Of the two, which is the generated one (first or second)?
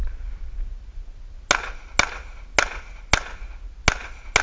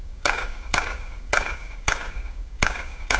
second